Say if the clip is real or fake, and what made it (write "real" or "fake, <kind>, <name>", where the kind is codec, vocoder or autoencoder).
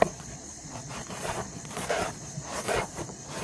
fake, vocoder, Vocos